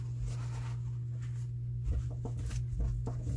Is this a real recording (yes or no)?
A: yes